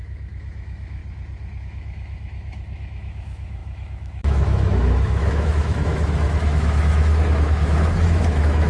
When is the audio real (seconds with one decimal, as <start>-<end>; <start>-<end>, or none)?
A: 1.0-1.6